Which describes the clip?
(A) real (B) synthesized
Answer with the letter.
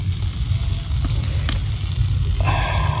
A